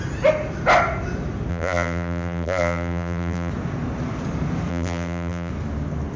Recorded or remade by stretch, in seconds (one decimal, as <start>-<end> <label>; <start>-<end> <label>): 0.0-1.5 recorded; 1.5-3.5 remade; 3.5-4.7 recorded; 4.7-5.5 remade; 5.5-6.2 recorded